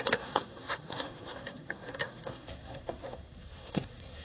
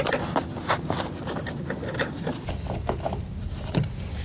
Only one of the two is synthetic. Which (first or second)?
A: first